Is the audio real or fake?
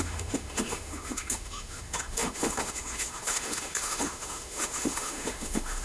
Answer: fake